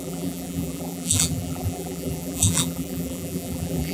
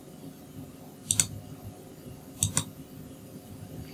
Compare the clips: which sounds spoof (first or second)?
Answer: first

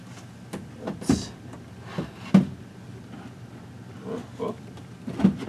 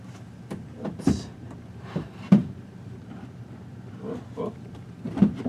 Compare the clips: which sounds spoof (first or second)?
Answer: second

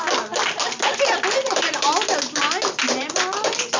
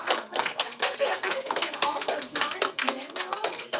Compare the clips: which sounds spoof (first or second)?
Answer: second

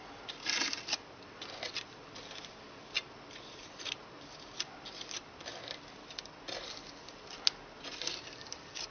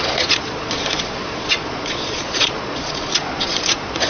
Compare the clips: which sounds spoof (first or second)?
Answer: second